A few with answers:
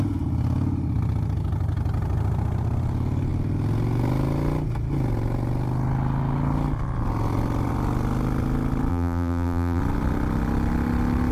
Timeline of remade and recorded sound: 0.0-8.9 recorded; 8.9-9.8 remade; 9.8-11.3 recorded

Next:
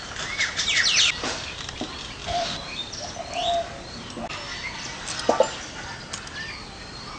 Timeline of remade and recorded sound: 0.0-2.2 recorded; 2.2-2.9 remade; 2.9-7.2 recorded

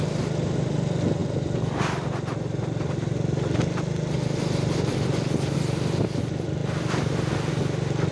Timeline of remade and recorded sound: 0.0-8.1 recorded

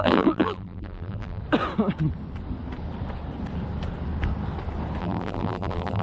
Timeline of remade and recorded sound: 0.0-1.4 remade; 1.4-5.0 recorded; 5.0-6.0 remade

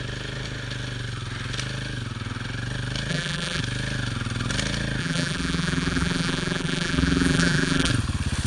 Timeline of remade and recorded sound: 0.0-3.1 recorded; 3.1-3.6 remade; 3.6-5.0 recorded; 5.0-7.9 remade; 7.9-8.5 recorded

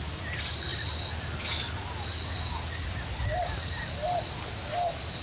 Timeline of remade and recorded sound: 0.0-5.2 recorded